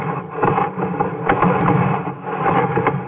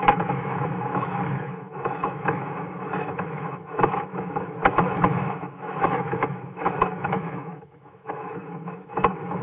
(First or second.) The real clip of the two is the first